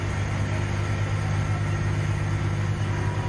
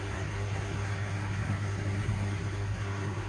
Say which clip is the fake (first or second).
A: second